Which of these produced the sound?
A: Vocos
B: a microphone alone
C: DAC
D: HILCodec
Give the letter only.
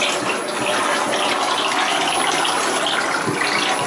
B